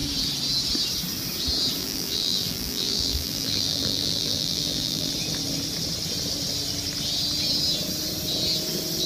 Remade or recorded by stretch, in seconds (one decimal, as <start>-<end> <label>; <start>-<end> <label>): 0.0-1.8 recorded; 1.8-5.1 remade; 5.1-9.1 recorded